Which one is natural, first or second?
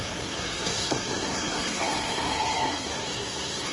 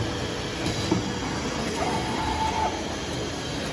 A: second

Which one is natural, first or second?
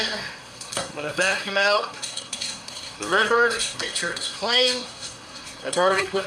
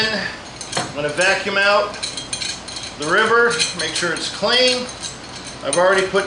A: second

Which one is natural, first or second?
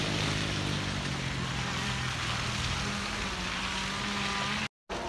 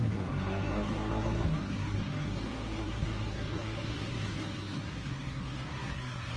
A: first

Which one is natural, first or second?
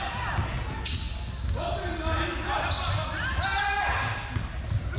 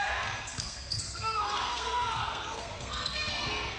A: first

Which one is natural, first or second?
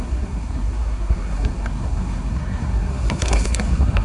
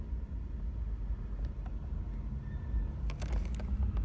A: second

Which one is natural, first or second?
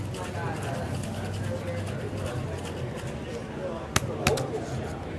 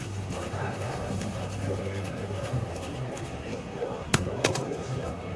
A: first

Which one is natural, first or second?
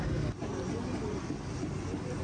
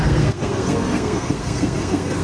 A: first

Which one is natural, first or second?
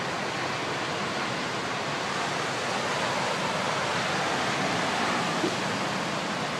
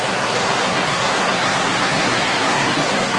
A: first